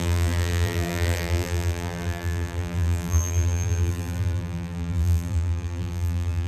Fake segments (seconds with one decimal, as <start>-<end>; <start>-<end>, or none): 0.0-6.5